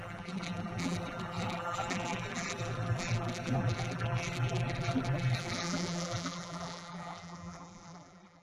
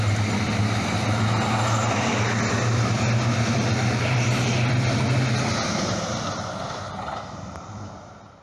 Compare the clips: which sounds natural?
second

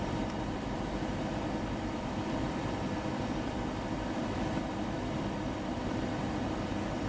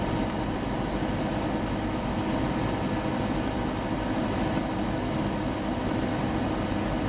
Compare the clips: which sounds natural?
second